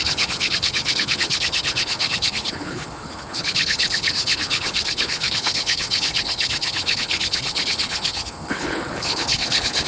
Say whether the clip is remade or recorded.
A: remade